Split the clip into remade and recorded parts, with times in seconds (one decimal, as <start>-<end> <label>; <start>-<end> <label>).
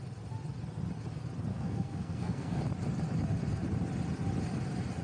0.0-1.5 recorded; 1.5-2.6 remade; 2.6-5.0 recorded